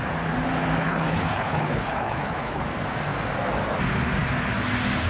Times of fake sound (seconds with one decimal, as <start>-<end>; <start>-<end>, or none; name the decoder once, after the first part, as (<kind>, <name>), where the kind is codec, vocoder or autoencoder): 0.8-2.6 (codec, HILCodec)